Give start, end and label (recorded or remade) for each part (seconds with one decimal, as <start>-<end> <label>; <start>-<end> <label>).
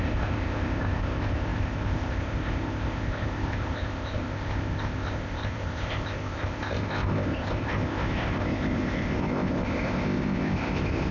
0.0-11.1 remade